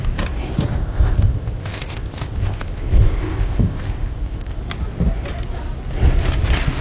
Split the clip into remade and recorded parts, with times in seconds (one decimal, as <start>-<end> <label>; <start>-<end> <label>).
0.0-0.8 recorded; 0.8-4.6 remade; 4.6-6.8 recorded